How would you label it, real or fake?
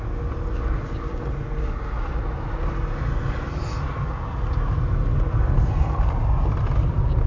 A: real